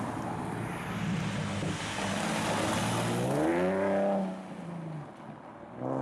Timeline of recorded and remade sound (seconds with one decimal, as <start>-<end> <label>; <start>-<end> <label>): 0.0-6.0 recorded